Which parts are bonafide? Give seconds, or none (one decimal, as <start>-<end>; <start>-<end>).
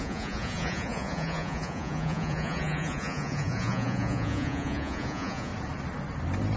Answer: 5.5-6.6